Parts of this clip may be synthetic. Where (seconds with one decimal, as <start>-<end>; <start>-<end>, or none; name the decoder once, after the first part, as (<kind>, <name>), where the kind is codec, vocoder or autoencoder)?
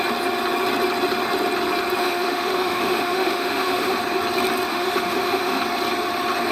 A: 2.0-4.0 (autoencoder, DAC-VAE); 4.7-5.6